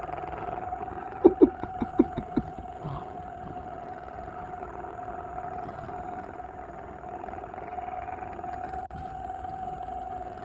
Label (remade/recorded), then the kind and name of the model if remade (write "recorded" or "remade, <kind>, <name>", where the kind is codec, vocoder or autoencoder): remade, vocoder, HiFi-GAN